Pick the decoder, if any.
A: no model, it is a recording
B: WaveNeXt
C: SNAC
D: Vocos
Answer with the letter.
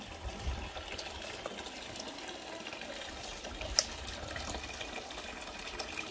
A